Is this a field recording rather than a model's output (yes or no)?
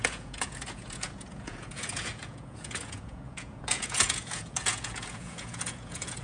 no